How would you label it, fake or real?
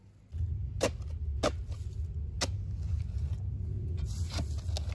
real